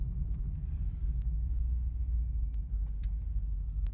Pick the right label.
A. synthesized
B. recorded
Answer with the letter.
B